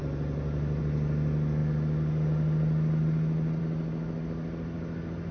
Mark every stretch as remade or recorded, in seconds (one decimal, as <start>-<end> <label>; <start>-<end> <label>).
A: 0.0-5.3 recorded